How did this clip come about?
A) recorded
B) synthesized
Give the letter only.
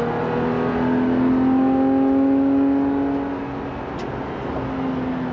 A